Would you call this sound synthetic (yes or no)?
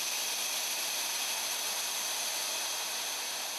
no